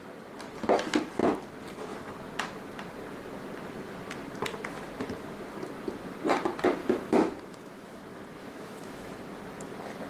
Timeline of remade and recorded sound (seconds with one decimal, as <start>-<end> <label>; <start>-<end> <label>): 0.0-6.8 recorded; 6.8-8.0 remade; 8.0-8.4 recorded; 8.4-9.1 remade; 9.1-10.1 recorded